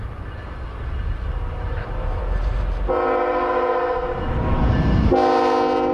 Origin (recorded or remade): recorded